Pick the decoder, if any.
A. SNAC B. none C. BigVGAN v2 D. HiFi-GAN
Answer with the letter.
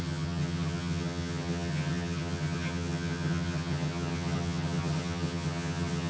D